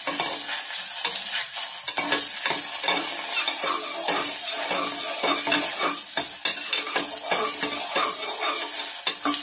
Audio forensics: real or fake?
real